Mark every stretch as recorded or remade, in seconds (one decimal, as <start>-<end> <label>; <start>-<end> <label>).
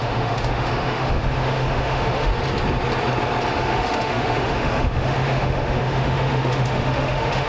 0.0-2.3 remade; 2.3-3.5 recorded; 3.5-7.5 remade